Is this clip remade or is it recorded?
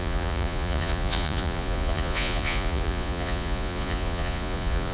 remade